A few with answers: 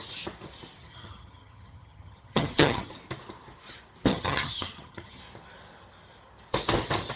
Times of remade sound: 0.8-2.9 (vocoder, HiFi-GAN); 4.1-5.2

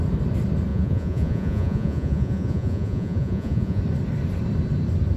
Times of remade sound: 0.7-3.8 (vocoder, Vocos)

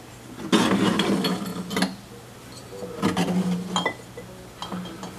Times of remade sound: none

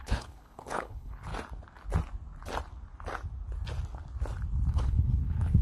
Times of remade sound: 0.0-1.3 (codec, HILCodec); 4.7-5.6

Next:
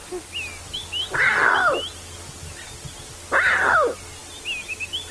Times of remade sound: none

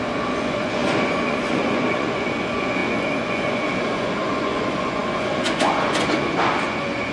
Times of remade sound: 0.0-7.1 (vocoder, Vocos)